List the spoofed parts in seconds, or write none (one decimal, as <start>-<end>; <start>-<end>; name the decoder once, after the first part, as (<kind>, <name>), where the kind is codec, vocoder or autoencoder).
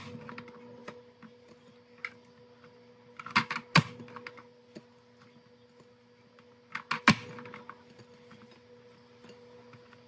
none